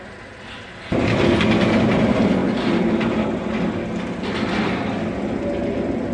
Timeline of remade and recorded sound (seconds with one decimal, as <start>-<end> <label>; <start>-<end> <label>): 0.0-6.1 recorded

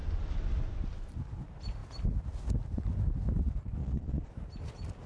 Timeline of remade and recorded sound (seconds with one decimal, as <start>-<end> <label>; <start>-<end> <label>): 0.0-3.8 recorded; 3.8-4.3 remade; 4.3-5.1 recorded